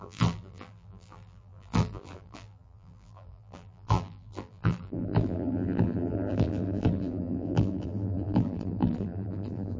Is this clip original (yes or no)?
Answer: no